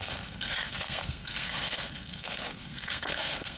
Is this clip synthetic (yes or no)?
yes